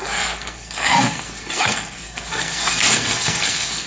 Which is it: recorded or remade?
remade